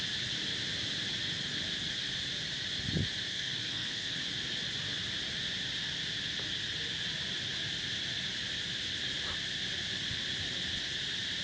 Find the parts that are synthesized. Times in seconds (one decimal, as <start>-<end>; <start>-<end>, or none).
3.3-4.2